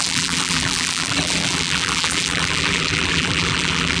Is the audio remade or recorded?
remade